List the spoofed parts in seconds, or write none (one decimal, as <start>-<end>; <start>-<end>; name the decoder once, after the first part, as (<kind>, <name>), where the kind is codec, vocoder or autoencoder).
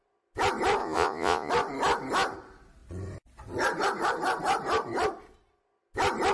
0.8-1.5 (vocoder, Vocos)